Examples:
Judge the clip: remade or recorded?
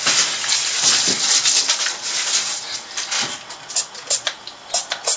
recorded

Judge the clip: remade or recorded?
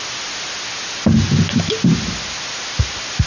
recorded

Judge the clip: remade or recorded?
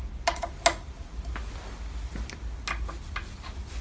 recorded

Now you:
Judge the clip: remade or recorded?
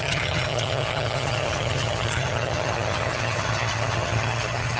remade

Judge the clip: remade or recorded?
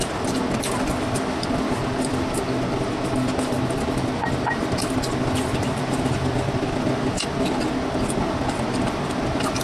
recorded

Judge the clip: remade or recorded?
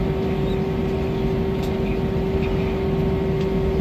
recorded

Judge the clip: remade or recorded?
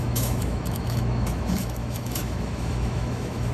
remade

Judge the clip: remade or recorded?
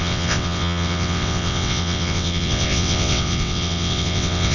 remade